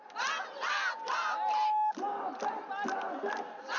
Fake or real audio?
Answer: real